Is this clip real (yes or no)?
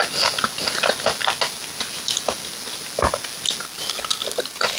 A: yes